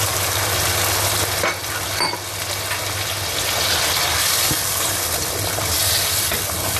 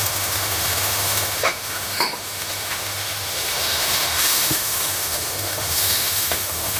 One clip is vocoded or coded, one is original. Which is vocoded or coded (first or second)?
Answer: second